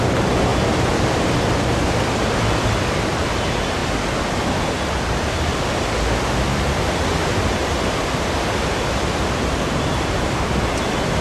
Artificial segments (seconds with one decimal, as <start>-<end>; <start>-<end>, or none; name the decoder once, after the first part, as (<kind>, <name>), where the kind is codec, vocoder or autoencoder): 0.5-3.3 (vocoder, BigVGAN v2)